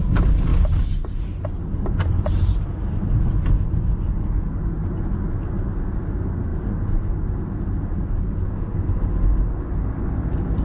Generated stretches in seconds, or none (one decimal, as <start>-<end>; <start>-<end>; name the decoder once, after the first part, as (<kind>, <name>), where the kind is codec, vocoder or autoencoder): none